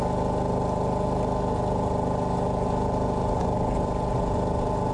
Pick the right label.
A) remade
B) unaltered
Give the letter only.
B